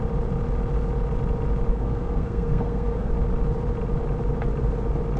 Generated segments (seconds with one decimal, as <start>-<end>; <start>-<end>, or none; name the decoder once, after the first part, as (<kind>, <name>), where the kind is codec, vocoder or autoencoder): 1.7-3.1 (codec, SNAC)